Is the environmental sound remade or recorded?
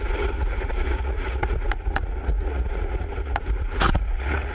remade